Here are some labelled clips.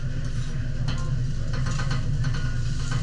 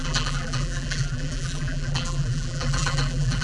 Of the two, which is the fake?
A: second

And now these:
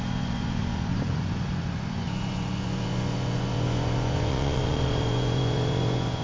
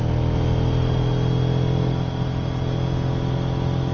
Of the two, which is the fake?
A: first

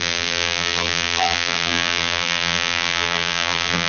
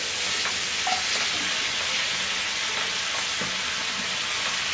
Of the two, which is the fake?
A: first